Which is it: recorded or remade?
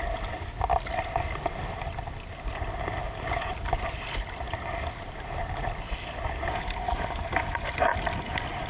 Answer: recorded